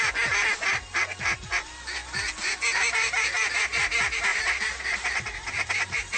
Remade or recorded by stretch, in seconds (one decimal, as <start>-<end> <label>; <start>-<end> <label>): 0.0-4.3 recorded; 4.3-6.2 remade